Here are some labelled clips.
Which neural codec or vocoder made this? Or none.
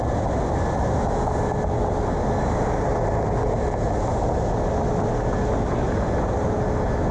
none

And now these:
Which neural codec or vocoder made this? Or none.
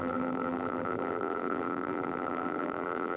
vocoder, BigVGAN v2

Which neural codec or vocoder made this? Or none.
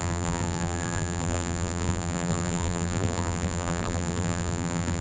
vocoder, BigVGAN v2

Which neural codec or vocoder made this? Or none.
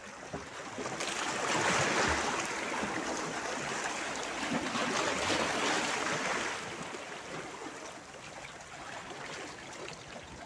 none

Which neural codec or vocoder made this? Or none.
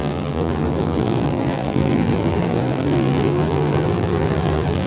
vocoder, BigVGAN v2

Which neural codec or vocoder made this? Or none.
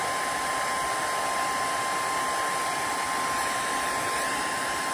none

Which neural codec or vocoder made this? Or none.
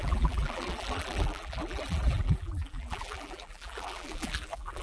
vocoder, BigVGAN v2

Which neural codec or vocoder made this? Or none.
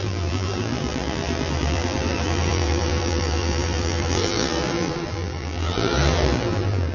vocoder, BigVGAN v2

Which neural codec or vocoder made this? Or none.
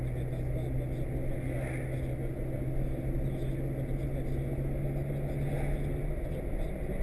none